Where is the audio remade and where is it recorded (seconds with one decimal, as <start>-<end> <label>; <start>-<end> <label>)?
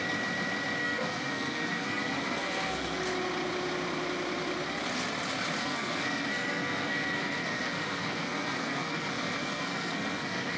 0.0-0.8 recorded; 0.8-3.0 remade; 3.0-5.6 recorded; 5.6-10.6 remade